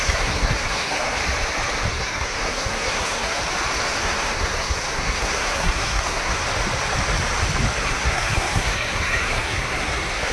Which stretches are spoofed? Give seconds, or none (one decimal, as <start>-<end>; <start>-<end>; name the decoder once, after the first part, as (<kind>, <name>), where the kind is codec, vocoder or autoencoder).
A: 0.0-1.2 (codec, SNAC); 1.9-3.4; 4.0-6.4; 7.8-10.3